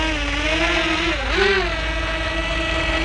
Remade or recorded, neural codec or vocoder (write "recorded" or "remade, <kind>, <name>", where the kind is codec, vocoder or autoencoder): recorded